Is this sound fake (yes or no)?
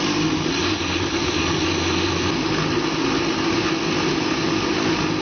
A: no